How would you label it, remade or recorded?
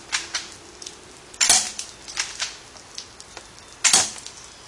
recorded